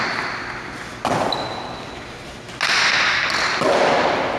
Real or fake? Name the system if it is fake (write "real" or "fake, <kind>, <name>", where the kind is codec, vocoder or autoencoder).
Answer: real